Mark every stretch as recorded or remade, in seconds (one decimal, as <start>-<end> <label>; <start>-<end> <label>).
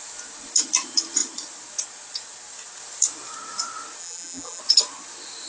0.0-4.0 recorded; 4.0-4.6 remade; 4.6-5.5 recorded